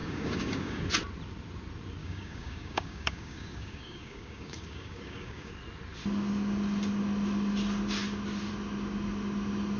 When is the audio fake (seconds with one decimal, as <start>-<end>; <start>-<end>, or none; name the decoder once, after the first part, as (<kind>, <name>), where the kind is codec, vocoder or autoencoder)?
0.0-0.8 (codec, DAC); 2.0-5.5